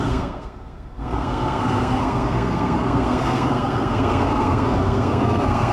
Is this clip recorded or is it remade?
remade